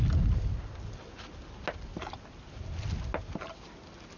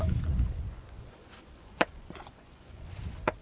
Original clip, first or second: first